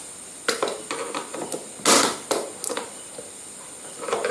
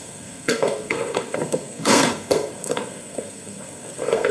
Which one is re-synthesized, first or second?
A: second